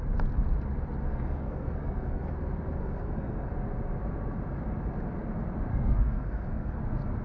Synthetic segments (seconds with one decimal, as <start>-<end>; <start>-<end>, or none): 1.1-2.3; 2.8-3.5; 5.7-6.8